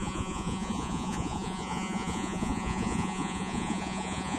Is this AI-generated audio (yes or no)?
yes